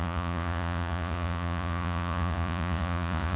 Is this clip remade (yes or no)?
yes